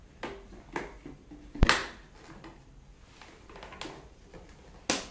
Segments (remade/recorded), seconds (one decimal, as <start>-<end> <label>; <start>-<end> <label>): 0.0-5.1 recorded